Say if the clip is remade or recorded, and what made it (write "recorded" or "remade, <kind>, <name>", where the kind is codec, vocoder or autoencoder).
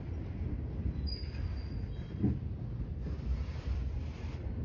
recorded